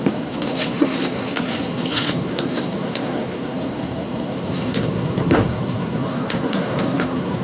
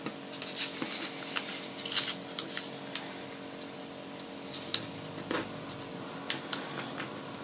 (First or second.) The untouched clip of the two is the second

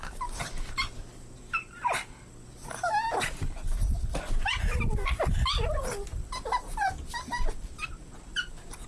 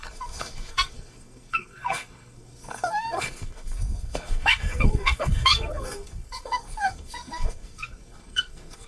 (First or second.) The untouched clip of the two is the first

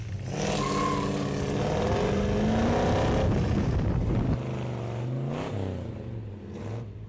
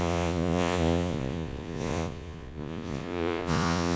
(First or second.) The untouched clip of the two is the first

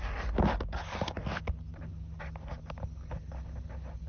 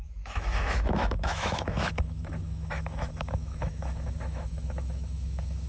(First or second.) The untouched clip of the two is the first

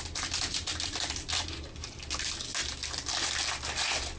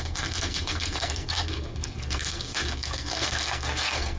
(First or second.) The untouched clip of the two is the first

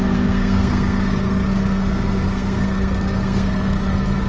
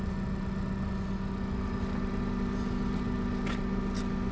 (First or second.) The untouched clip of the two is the second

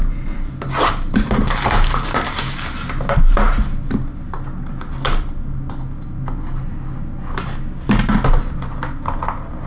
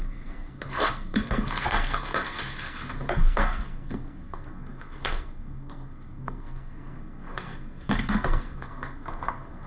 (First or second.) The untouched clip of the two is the first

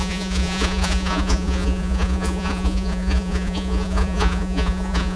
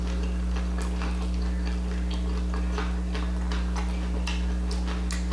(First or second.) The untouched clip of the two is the second